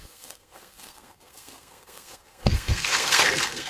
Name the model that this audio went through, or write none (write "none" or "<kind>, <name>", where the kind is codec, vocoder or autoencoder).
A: codec, SNAC